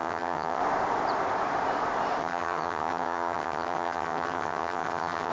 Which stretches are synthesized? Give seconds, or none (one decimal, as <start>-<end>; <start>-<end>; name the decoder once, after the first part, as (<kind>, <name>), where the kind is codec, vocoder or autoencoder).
0.0-0.6 (vocoder, HiFi-GAN); 2.2-5.3